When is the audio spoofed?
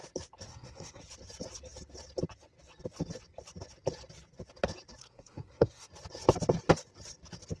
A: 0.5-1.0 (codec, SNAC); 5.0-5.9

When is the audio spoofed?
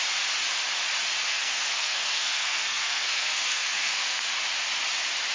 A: 1.3-4.3 (codec, SNAC)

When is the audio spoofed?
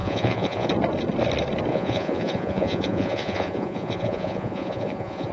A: 0.0-0.7 (vocoder, Vocos); 1.7-5.3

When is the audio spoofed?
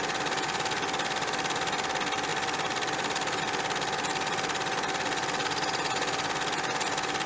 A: 2.3-3.4 (vocoder, BigVGAN v2)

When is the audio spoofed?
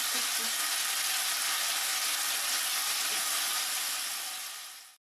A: none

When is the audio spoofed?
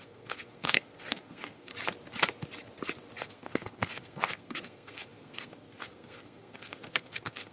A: 0.0-1.7 (codec, SNAC); 3.2-7.5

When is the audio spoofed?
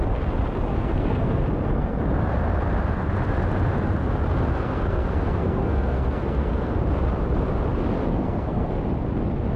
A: 0.7-2.0 (codec, SNAC); 4.5-6.8; 8.1-8.7